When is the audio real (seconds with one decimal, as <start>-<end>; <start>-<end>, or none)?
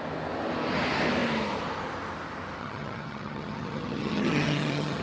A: 0.0-2.6